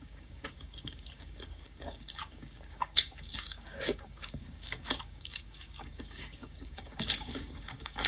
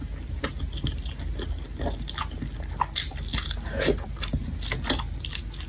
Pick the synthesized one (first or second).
first